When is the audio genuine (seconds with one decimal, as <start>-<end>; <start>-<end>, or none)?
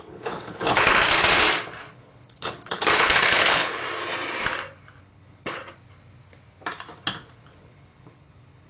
1.0-1.9; 3.8-5.0; 5.6-7.3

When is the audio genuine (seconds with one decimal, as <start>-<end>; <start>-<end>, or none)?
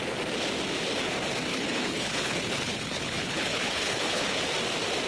0.0-1.5; 4.4-5.1